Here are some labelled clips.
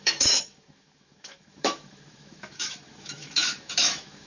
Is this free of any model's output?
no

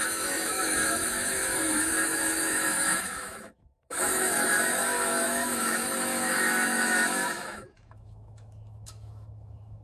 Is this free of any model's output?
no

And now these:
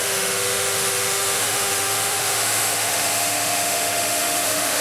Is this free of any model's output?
no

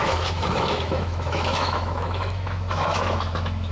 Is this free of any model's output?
no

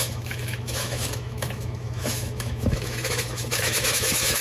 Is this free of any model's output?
no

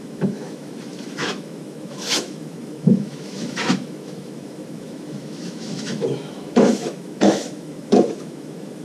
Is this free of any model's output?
no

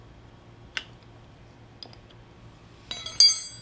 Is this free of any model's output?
yes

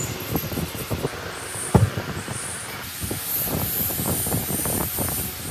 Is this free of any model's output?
yes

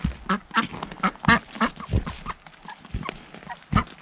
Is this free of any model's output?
yes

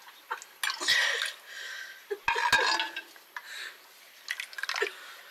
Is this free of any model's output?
yes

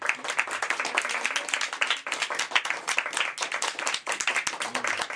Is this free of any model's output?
yes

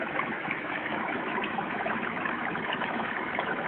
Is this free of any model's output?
no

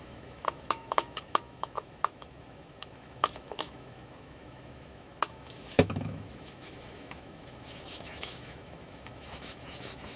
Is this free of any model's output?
no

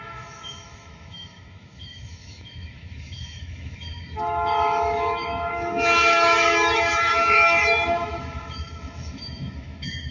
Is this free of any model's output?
no